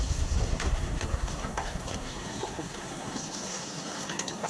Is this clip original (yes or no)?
no